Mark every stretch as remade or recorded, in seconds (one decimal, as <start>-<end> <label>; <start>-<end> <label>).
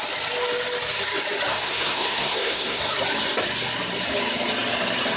0.0-1.5 recorded; 1.5-2.8 remade; 2.8-5.2 recorded